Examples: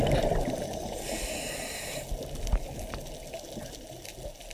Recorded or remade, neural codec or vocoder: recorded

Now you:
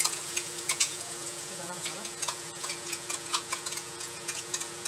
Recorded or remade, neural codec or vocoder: remade, vocoder, Vocos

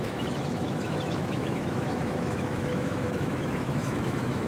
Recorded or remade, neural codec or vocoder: remade, autoencoder, DAC-VAE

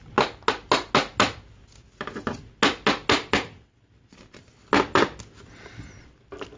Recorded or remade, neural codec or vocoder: recorded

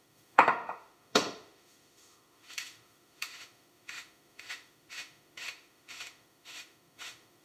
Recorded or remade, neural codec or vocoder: remade, autoencoder, DAC-VAE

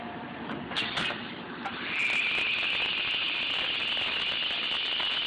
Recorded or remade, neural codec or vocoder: recorded